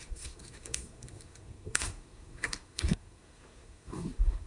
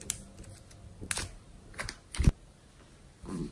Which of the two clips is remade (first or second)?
first